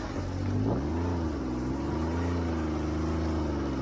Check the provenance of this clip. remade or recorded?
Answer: recorded